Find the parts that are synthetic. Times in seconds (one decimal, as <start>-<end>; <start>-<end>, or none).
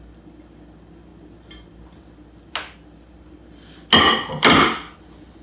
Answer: none